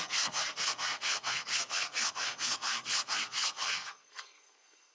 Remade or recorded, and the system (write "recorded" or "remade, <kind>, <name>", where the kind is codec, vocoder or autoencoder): remade, codec, SNAC